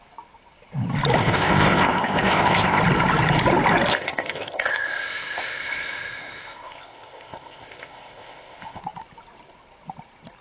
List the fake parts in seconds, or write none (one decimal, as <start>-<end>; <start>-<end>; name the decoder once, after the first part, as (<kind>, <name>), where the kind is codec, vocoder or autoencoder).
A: 1.2-2.8 (codec, ZipCodec); 3.9-8.8